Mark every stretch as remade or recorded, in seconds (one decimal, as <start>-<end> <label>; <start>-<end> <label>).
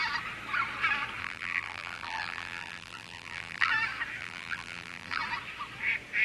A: 0.0-1.2 recorded; 1.2-3.7 remade; 3.7-4.2 recorded; 4.2-5.2 remade; 5.2-6.2 recorded